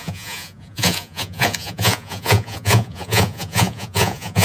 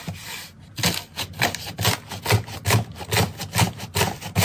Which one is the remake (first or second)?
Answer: first